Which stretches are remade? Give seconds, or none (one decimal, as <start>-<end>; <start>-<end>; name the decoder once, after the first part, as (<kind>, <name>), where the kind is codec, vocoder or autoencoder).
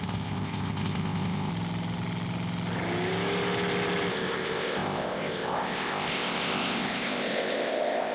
0.0-1.5 (codec, ZipCodec); 4.1-8.1